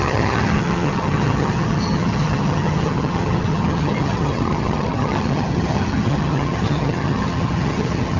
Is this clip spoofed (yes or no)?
yes